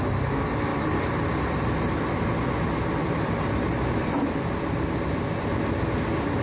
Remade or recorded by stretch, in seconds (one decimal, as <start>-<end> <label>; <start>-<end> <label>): 0.0-0.7 recorded; 0.7-2.3 remade; 2.3-3.0 recorded; 3.0-5.3 remade; 5.3-6.4 recorded